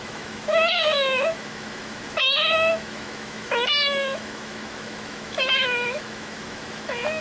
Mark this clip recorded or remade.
remade